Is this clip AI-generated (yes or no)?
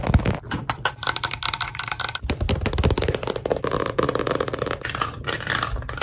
no